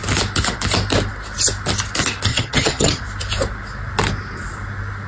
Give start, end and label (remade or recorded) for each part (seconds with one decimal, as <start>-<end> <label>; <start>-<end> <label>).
0.0-2.3 recorded; 2.3-3.0 remade; 3.0-5.1 recorded